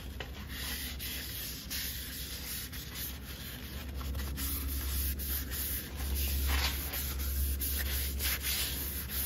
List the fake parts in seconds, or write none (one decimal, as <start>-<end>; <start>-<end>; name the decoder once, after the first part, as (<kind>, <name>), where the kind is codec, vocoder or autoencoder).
none